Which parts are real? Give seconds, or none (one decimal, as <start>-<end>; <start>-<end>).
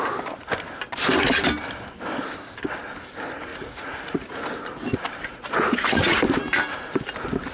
0.0-3.5; 4.4-5.3; 6.2-7.5